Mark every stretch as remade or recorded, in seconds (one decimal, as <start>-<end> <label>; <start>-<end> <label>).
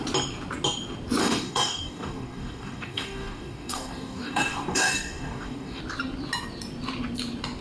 0.0-1.2 recorded; 1.2-5.8 remade; 5.8-7.6 recorded